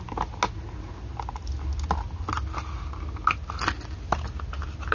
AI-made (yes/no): no